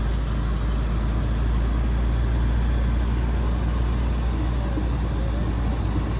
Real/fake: real